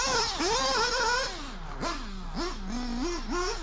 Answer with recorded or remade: recorded